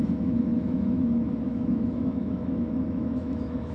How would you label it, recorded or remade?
remade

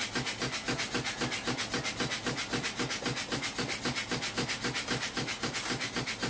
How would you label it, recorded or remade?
recorded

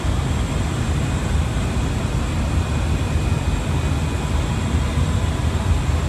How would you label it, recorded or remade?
recorded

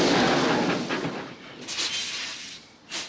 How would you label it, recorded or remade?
recorded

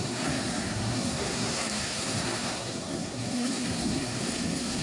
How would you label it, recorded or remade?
remade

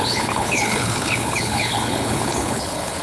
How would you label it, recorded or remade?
remade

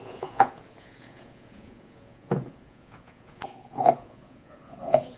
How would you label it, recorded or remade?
remade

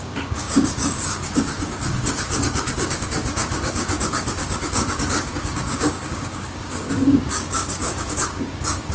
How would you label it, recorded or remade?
remade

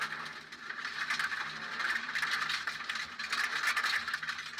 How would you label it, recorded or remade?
recorded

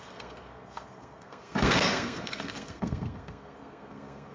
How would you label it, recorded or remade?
remade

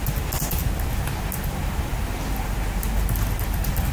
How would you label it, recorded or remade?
recorded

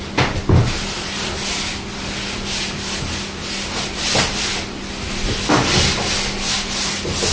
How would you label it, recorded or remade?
recorded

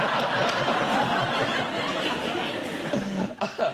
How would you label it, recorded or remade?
recorded